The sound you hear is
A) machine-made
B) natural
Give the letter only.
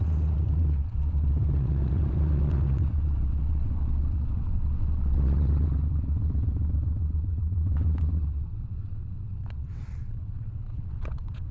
A